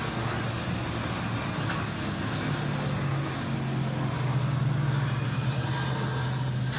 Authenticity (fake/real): real